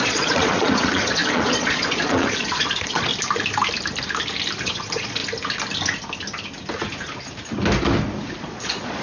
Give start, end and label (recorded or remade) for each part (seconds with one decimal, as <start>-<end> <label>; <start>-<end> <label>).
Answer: 0.0-3.1 remade; 3.1-4.6 recorded; 4.6-5.2 remade; 5.2-8.4 recorded; 8.4-9.0 remade